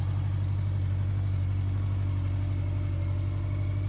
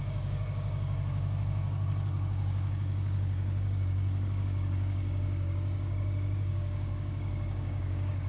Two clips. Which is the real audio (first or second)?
first